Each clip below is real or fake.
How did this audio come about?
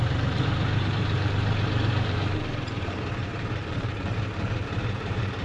fake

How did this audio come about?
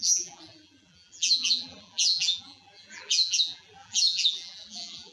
fake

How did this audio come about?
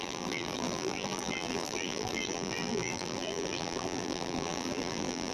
fake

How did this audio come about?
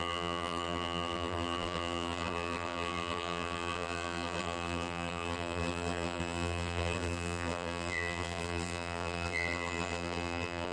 fake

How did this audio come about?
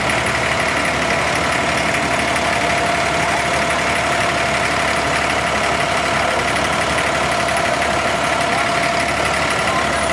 real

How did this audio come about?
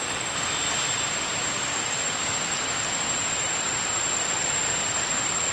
fake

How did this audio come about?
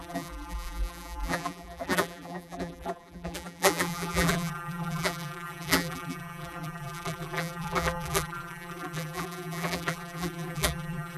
fake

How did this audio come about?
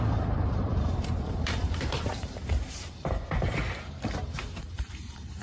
fake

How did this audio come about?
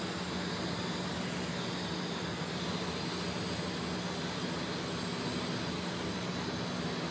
real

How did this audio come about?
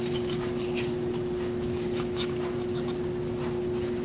real